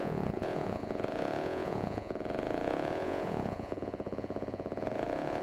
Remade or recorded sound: remade